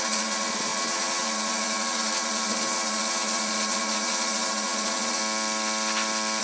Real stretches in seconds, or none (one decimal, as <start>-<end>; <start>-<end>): 5.2-6.4